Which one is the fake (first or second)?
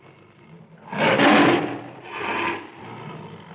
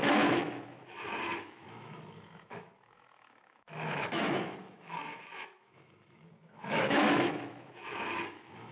second